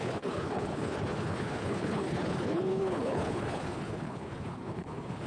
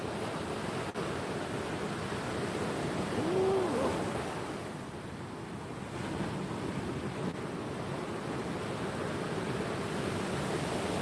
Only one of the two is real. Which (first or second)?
second